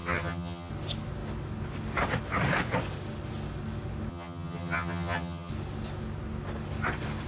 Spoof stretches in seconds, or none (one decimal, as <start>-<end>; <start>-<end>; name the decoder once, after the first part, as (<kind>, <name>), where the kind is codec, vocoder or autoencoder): 0.0-0.7 (vocoder, HiFi-GAN); 4.1-5.5